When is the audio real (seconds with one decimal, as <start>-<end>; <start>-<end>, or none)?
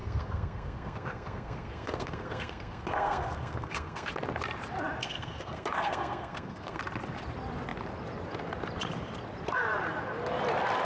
4.1-5.0; 6.8-10.8